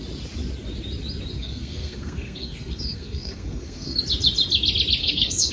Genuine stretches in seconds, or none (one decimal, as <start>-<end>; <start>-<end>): 0.0-1.4; 4.0-5.0